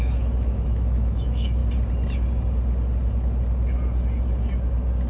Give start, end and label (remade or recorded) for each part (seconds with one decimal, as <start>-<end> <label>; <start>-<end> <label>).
0.0-1.6 remade; 1.6-5.1 recorded